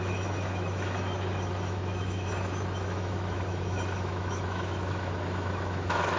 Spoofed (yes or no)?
yes